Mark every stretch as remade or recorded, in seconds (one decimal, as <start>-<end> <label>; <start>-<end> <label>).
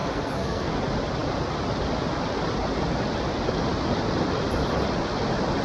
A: 0.0-0.7 remade; 0.7-5.6 recorded